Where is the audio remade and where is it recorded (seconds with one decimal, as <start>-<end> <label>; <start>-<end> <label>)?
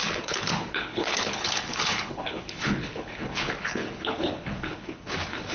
0.0-5.5 remade